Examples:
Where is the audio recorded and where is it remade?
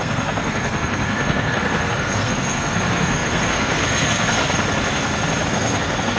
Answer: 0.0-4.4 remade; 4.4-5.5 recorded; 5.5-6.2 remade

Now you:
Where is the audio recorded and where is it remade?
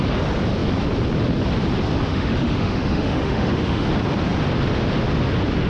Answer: 0.0-2.1 recorded; 2.1-3.9 remade; 3.9-5.7 recorded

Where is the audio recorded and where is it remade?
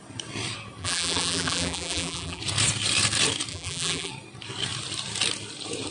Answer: 0.0-0.8 recorded; 0.8-2.4 remade; 2.4-3.5 recorded; 3.5-4.1 remade; 4.1-5.9 recorded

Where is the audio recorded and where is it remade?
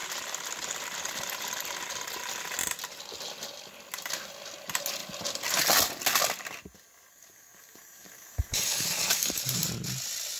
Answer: 0.0-7.1 recorded; 7.1-9.4 remade; 9.4-10.4 recorded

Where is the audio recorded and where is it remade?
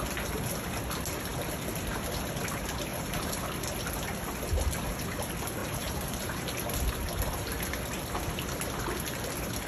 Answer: 0.0-2.9 recorded; 2.9-3.4 remade; 3.4-5.6 recorded; 5.6-6.5 remade; 6.5-9.7 recorded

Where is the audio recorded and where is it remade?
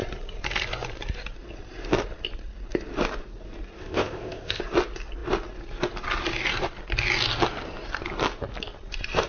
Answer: 0.0-3.8 recorded; 3.8-4.6 remade; 4.6-9.3 recorded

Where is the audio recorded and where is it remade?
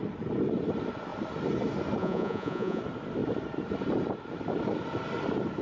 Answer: 0.0-2.0 recorded; 2.0-2.8 remade; 2.8-5.6 recorded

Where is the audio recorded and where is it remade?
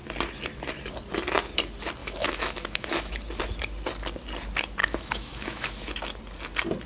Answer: 0.0-2.0 recorded; 2.0-3.2 remade; 3.2-4.8 recorded; 4.8-5.7 remade; 5.7-6.9 recorded